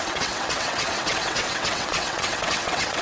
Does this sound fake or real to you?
fake